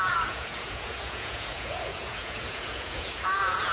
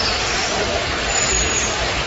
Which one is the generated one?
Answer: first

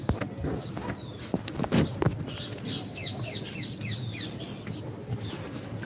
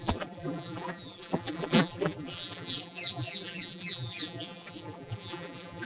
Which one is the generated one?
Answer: second